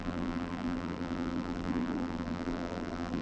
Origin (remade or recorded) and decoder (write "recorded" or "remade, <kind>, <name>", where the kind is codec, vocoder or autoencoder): remade, vocoder, BigVGAN v2